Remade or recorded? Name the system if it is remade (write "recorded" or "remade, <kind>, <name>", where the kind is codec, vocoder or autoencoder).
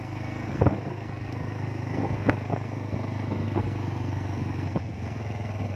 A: remade, codec, SNAC